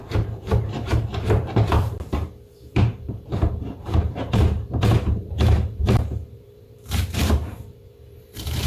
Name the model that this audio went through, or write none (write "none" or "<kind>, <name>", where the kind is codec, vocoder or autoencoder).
vocoder, BigVGAN v2